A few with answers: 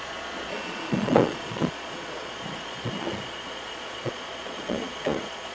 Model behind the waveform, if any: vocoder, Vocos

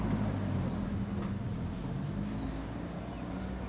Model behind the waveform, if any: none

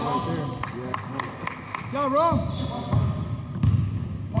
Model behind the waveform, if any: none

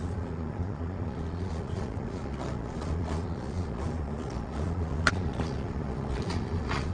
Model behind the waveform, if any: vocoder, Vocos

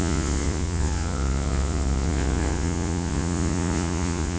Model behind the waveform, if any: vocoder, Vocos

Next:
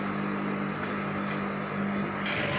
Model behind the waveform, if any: none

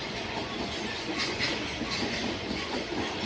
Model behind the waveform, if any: vocoder, Vocos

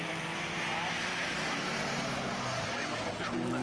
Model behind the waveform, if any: none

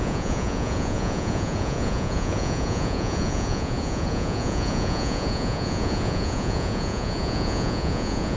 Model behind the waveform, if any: vocoder, Vocos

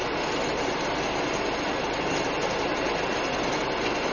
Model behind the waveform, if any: none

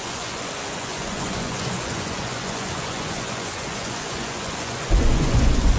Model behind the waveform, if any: vocoder, Vocos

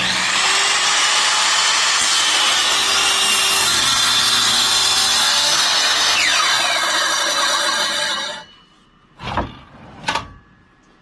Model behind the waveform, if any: none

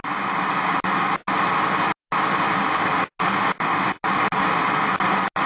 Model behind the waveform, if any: none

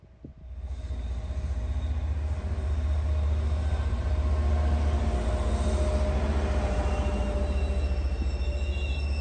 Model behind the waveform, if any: none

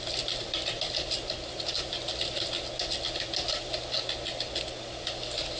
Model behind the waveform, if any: none